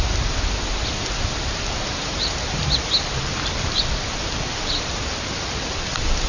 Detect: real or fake fake